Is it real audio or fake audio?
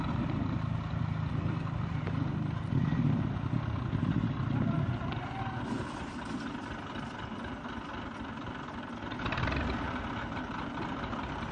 real